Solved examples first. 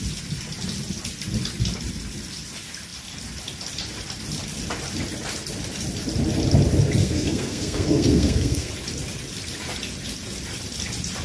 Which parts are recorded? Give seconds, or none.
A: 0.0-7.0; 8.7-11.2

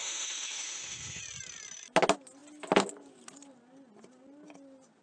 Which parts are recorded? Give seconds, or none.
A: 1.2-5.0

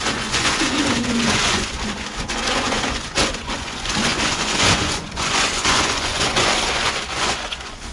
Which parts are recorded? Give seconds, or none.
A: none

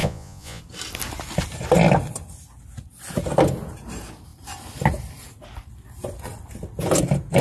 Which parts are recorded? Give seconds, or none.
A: 0.6-7.4